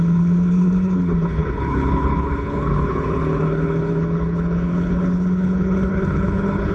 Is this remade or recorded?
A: remade